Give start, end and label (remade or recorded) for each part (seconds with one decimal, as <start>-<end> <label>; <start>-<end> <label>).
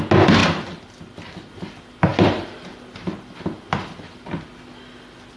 0.0-5.4 recorded